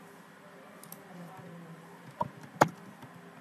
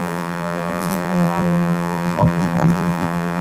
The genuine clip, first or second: first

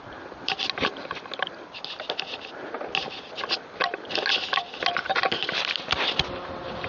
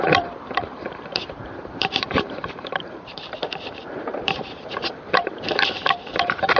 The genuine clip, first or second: first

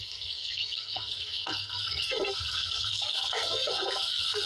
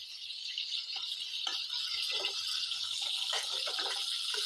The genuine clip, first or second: second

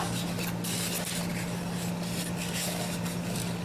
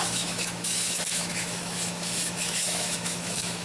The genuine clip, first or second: first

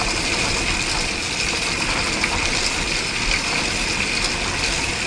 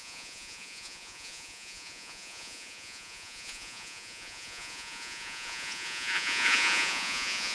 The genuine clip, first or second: first